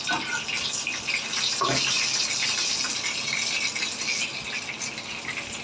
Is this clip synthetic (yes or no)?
no